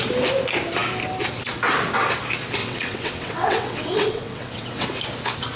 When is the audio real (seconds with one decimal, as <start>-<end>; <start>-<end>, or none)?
0.0-2.6; 5.0-5.6